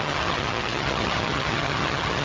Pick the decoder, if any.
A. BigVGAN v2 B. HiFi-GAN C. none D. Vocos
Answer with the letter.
B